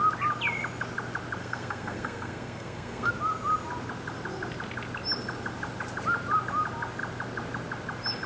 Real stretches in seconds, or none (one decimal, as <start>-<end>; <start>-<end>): 0.0-1.4; 3.1-8.3